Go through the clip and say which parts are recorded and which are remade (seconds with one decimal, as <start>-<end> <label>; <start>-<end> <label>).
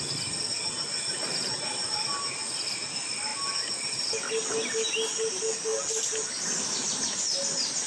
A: 0.0-7.9 recorded